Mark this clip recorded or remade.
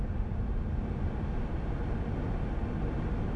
recorded